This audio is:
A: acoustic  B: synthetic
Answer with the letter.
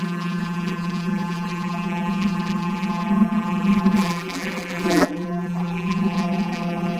B